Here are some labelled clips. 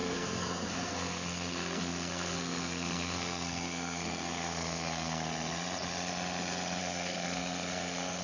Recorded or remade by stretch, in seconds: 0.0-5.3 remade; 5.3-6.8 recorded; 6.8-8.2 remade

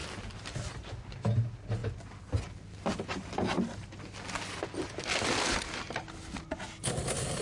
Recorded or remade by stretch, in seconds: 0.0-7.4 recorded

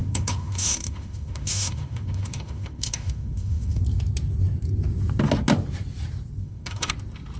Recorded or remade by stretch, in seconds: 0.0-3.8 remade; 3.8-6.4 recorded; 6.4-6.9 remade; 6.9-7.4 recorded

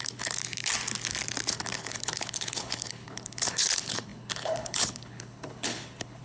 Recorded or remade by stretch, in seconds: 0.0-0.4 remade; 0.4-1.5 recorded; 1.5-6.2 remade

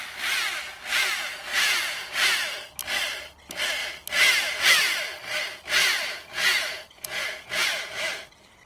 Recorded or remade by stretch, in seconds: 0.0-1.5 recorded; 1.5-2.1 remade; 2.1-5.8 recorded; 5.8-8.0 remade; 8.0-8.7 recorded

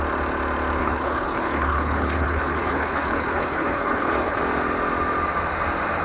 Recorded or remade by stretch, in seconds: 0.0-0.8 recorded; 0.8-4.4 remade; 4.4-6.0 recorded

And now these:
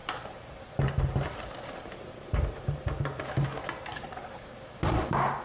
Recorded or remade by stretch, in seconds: 0.0-3.2 remade; 3.2-3.9 recorded; 3.9-5.0 remade; 5.0-5.4 recorded

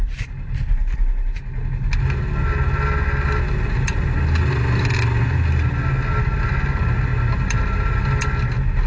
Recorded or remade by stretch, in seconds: 0.0-8.9 recorded